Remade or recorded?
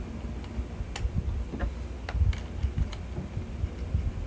recorded